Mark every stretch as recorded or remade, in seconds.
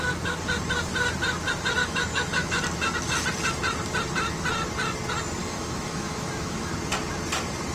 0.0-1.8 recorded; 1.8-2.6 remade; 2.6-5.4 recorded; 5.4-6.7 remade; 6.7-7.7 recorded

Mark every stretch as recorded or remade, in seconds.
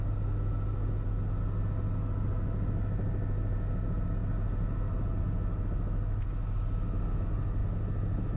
0.0-8.4 recorded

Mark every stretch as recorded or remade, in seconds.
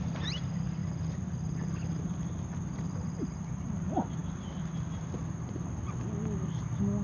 0.0-7.0 recorded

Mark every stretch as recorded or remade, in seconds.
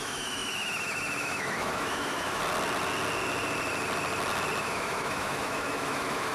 0.0-2.4 remade; 2.4-4.6 recorded; 4.6-6.3 remade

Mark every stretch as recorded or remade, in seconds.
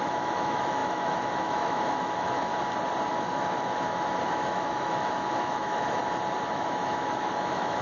0.0-2.5 remade; 2.5-3.1 recorded; 3.1-6.0 remade; 6.0-6.5 recorded; 6.5-7.8 remade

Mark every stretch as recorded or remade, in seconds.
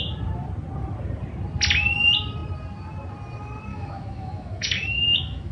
0.0-3.7 recorded; 3.7-5.5 remade